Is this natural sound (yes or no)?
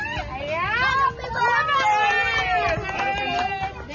yes